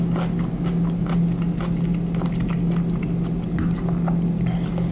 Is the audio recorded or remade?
recorded